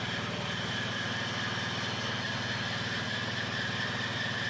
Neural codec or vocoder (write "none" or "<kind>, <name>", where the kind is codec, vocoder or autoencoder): none